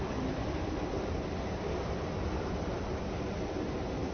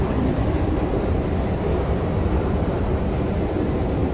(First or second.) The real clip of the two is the first